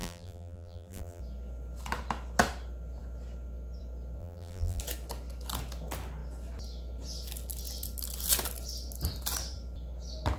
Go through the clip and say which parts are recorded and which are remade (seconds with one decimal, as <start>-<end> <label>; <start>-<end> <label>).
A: 0.0-1.2 remade; 1.2-4.2 recorded; 4.2-4.8 remade; 4.8-10.4 recorded